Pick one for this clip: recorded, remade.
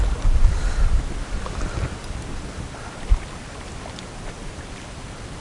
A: recorded